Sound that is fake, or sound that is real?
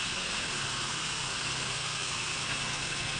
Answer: fake